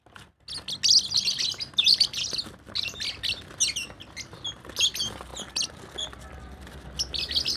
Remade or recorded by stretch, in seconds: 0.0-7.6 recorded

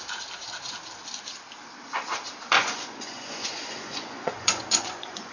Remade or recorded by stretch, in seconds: 0.0-2.6 recorded; 2.6-5.3 remade

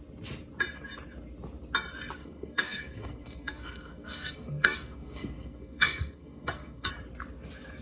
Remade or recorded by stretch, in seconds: 0.0-2.2 recorded; 2.2-6.9 remade; 6.9-7.8 recorded

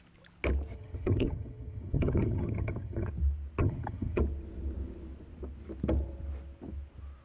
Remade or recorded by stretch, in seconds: 0.0-0.7 recorded; 0.7-3.1 remade; 3.1-3.6 recorded; 3.6-4.2 remade; 4.2-7.2 recorded